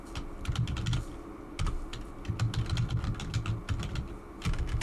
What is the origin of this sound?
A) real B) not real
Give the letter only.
A